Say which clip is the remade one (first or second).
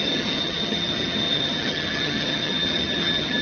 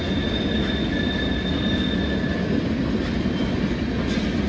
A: first